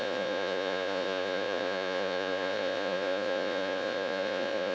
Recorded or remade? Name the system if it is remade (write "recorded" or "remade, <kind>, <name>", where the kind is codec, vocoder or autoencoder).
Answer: remade, vocoder, Vocos